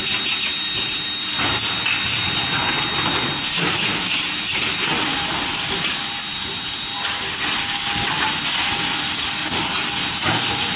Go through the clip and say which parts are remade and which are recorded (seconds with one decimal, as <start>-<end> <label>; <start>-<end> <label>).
0.0-7.6 recorded; 7.6-8.1 remade; 8.1-10.8 recorded